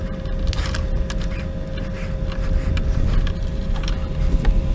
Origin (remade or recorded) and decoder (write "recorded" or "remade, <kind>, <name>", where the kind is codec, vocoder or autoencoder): recorded